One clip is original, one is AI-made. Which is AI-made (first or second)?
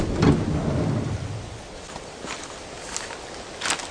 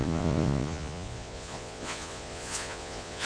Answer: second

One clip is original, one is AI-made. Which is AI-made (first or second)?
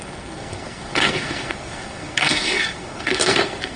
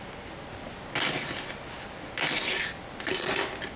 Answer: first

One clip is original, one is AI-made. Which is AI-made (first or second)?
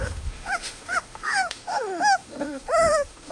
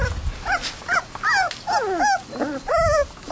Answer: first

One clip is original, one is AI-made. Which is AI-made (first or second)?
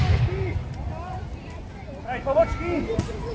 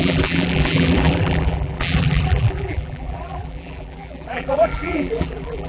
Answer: second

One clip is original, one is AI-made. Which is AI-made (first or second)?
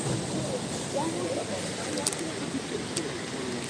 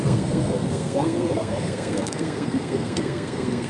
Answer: second